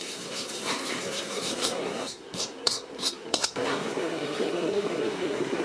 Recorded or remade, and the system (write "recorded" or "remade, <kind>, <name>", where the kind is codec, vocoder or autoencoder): remade, codec, SNAC